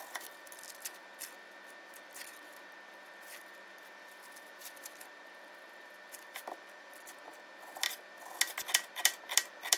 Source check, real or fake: real